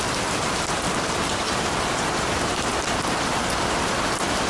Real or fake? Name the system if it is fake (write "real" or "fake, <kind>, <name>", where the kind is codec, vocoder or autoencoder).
real